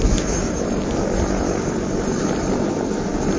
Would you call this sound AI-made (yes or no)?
no